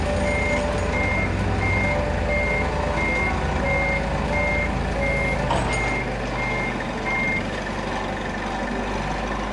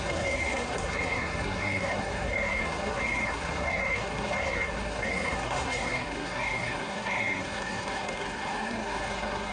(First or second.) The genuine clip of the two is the first